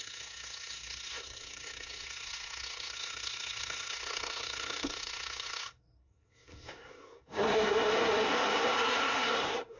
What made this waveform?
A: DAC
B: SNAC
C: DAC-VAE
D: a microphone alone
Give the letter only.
B